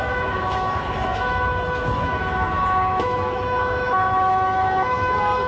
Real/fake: fake